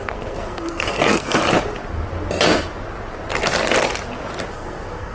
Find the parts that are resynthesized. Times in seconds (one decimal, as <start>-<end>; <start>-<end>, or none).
0.0-1.4; 4.5-5.1